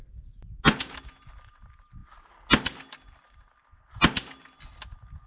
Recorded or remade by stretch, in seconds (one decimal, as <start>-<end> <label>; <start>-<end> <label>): 0.0-5.3 recorded